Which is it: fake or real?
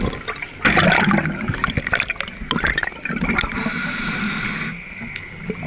real